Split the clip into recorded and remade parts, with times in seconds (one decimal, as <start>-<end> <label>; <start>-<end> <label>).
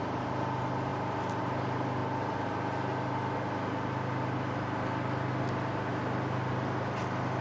0.0-7.4 recorded